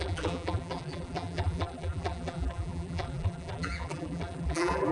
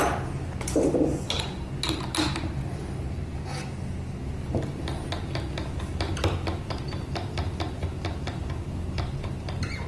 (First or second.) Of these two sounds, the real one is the second